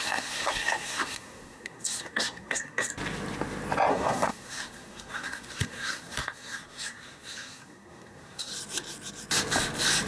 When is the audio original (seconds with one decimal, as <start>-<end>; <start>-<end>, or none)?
2.9-3.9; 8.5-10.1